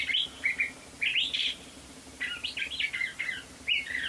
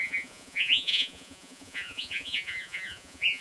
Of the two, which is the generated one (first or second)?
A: second